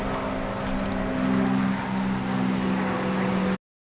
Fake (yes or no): no